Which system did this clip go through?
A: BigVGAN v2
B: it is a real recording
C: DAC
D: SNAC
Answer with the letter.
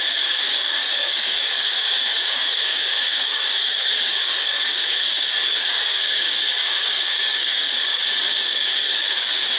C